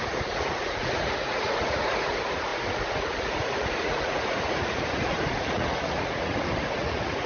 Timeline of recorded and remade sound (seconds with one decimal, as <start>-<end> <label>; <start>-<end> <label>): 0.0-7.3 remade